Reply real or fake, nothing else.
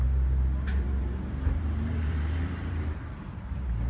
fake